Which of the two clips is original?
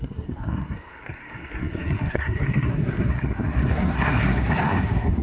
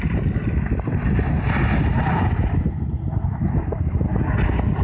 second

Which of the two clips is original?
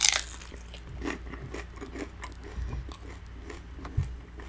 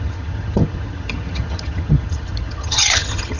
first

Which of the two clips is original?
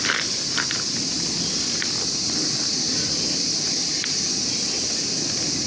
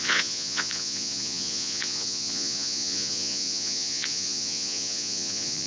first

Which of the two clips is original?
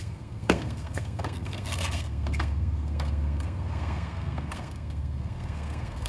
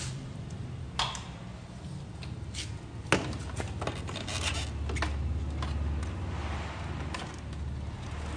second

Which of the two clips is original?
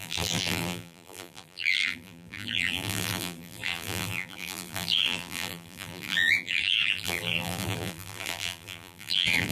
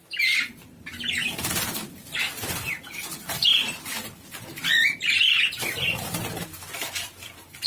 second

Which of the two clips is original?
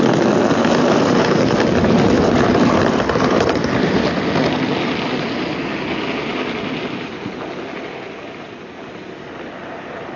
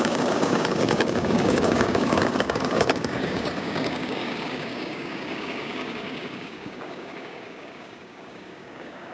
first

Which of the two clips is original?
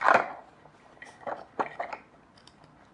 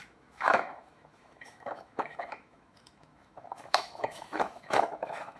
first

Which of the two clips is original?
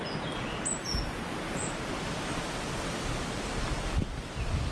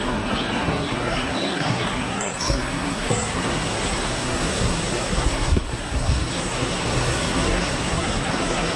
first